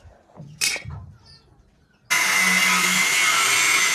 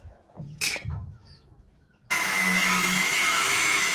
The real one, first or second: first